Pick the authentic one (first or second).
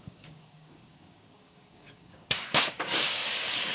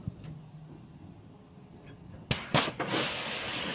second